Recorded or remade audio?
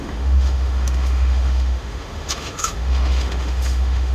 remade